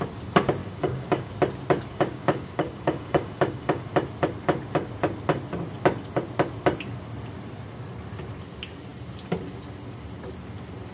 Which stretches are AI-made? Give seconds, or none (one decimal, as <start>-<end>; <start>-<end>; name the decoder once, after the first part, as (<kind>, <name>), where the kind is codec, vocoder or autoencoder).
0.6-1.3 (codec, DAC); 1.9-3.8